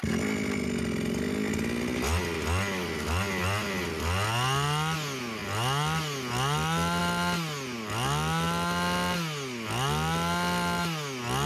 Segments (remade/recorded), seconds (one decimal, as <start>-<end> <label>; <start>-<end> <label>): 0.0-11.5 recorded